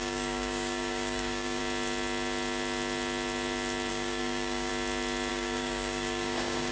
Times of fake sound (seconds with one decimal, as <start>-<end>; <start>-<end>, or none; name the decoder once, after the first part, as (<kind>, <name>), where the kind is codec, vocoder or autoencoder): 0.0-1.6 (codec, DAC); 3.9-4.7; 5.3-6.7